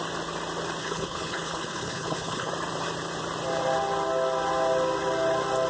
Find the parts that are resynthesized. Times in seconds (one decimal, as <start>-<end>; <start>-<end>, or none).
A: 0.8-2.5